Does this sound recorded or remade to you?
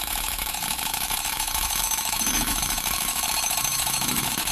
remade